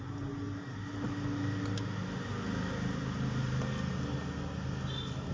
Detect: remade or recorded recorded